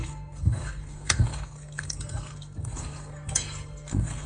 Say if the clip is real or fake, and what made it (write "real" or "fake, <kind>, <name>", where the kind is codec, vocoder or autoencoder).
fake, codec, SNAC